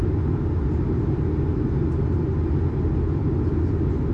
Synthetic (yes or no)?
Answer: no